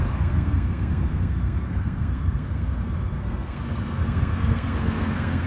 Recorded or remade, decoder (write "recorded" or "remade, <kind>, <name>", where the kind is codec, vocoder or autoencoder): remade, codec, SNAC